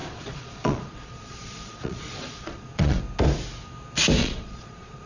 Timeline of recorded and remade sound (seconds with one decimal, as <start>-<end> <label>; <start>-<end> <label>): 0.0-3.0 remade; 3.0-4.2 recorded; 4.2-5.1 remade